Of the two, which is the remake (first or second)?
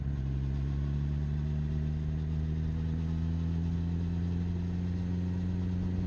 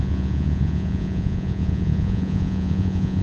second